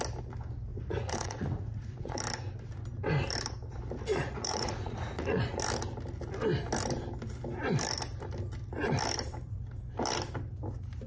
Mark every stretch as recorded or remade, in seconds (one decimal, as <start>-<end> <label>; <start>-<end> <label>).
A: 0.0-0.7 recorded; 0.7-2.2 remade; 2.2-4.1 recorded; 4.1-5.6 remade; 5.6-11.1 recorded